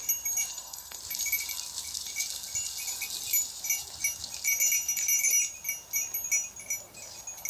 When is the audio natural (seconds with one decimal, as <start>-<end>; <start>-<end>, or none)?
0.0-0.5; 1.0-7.5